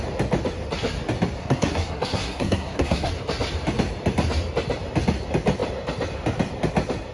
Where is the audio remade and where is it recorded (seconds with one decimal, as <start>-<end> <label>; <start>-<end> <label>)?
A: 0.0-1.4 recorded; 1.4-3.1 remade; 3.1-7.1 recorded